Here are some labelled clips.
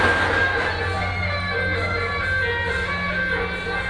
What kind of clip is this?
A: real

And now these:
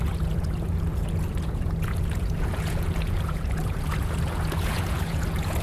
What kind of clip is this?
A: fake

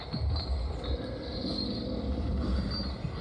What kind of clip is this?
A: real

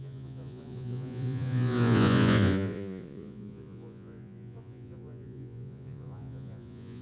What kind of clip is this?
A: fake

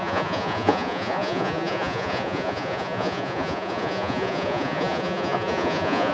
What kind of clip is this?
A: fake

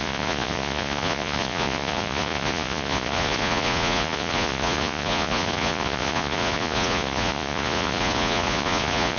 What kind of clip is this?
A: fake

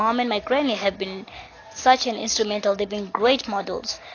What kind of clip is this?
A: real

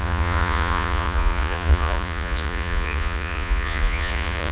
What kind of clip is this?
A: fake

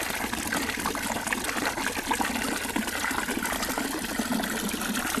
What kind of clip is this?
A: real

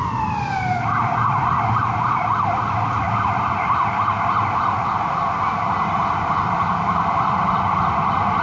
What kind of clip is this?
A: real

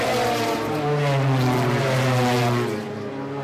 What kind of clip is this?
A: real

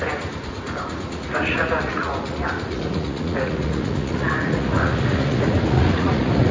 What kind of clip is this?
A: fake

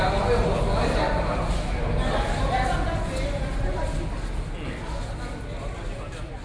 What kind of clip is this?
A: real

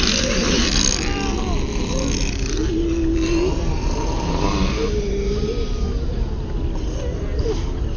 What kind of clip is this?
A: real